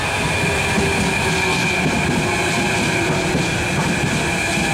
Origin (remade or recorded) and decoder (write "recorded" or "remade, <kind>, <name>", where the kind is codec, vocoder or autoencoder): recorded